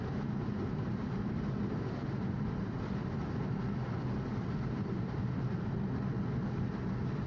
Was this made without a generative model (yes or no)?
yes